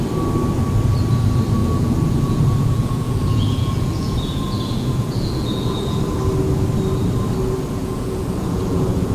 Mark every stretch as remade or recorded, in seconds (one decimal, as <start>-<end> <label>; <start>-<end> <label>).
0.0-1.6 recorded; 1.6-6.0 remade; 6.0-7.8 recorded; 7.8-9.1 remade